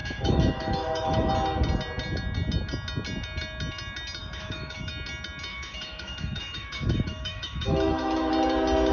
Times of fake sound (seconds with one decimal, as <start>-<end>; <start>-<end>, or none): 0.0-1.3; 4.2-4.9; 5.5-8.3